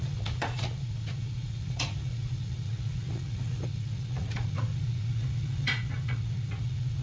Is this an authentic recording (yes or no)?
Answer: no